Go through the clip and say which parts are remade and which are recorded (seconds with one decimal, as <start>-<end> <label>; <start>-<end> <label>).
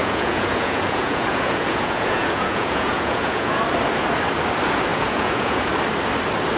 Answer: 0.0-3.6 remade; 3.6-4.9 recorded; 4.9-5.7 remade; 5.7-6.6 recorded